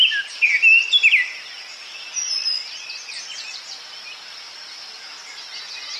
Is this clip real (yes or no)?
yes